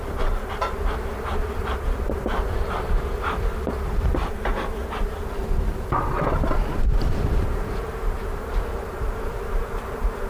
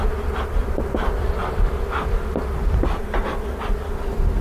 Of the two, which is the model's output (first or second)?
first